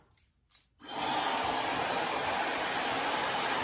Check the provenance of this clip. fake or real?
real